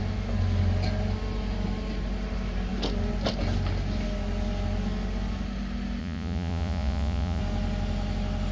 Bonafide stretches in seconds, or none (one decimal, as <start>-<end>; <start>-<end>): 0.0-6.0; 7.4-8.5